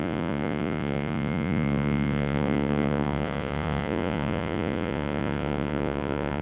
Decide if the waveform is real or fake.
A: fake